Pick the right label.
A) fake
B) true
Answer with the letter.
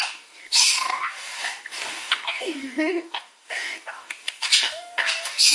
A